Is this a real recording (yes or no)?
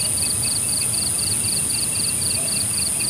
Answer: yes